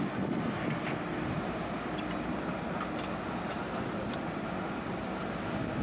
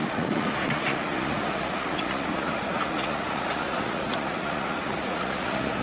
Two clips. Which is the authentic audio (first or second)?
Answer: first